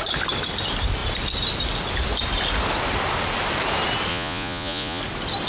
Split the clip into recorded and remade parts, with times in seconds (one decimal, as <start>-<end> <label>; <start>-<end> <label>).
0.0-4.1 recorded; 4.1-5.0 remade; 5.0-5.5 recorded